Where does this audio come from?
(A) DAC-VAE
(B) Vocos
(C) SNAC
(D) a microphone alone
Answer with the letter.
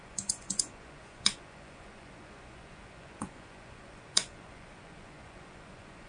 B